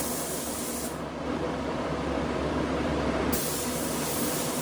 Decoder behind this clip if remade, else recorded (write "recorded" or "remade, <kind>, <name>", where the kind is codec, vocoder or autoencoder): remade, vocoder, BigVGAN v2